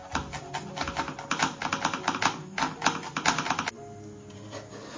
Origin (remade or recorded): recorded